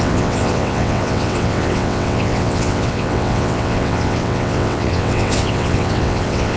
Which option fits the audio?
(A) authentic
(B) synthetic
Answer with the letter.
B